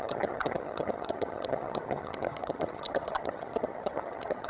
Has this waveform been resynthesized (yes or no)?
yes